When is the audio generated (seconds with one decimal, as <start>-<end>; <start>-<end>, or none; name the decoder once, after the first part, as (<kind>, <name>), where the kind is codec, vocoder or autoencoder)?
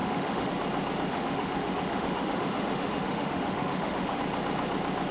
0.0-0.5 (autoencoder, DAC-VAE); 1.1-4.2